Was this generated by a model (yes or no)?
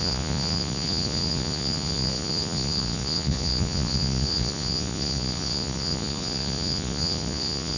yes